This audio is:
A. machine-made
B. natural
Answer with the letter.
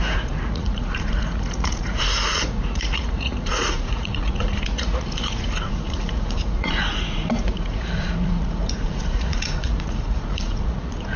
A